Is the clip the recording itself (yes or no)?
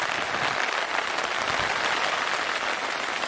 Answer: yes